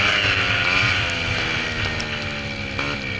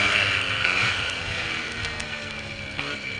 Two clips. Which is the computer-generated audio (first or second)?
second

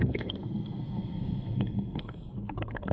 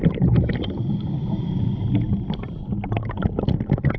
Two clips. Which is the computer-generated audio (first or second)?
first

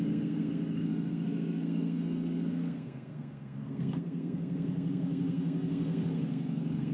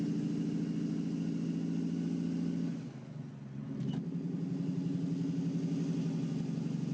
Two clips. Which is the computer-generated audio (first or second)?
first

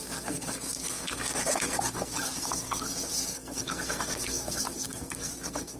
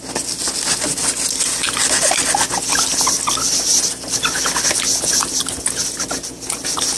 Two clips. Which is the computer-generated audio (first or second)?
first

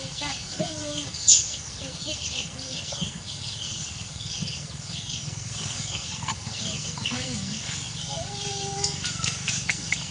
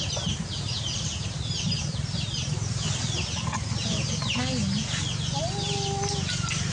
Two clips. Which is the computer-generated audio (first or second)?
first